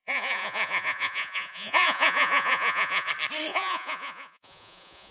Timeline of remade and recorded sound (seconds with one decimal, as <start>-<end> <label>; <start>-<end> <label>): 0.0-3.1 remade; 3.1-3.5 recorded; 3.5-5.1 remade